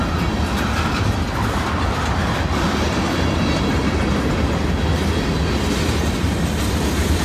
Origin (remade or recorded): recorded